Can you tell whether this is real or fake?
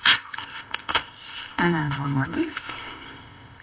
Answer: fake